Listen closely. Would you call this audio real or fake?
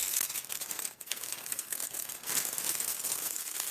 fake